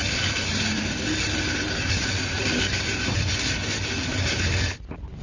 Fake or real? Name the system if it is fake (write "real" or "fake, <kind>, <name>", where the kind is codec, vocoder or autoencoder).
real